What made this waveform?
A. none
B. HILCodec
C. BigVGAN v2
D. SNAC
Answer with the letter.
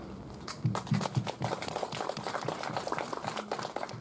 A